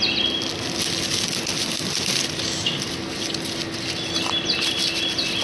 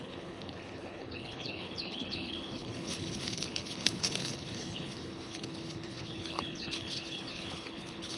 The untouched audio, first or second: first